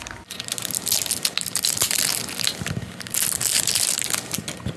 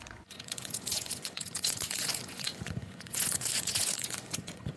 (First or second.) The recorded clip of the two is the first